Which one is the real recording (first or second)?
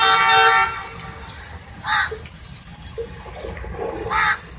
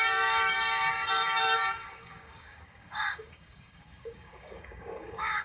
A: first